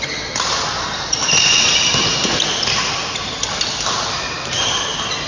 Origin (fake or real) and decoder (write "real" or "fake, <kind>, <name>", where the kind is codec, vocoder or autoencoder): real